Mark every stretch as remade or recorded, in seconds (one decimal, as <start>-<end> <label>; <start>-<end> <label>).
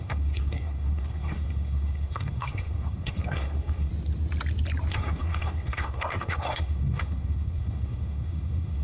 0.0-3.9 remade; 3.9-4.9 recorded; 4.9-8.8 remade